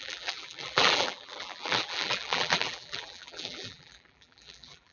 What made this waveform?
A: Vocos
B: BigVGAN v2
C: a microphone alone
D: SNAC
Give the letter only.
B